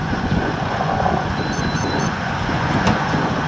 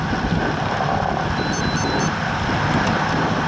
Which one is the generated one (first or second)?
first